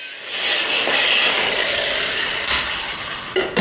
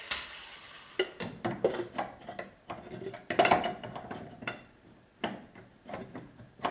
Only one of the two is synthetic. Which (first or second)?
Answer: second